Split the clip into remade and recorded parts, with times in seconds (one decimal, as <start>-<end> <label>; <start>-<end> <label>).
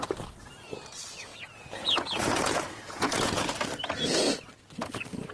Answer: 0.0-1.3 recorded; 1.3-3.5 remade; 3.5-5.3 recorded